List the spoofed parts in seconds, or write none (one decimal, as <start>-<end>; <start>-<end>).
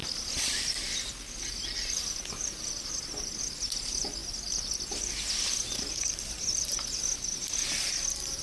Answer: 0.0-3.0